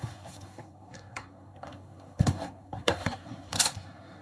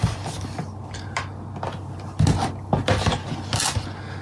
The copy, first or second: first